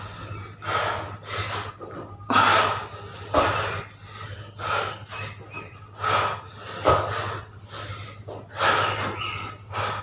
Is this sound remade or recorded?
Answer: recorded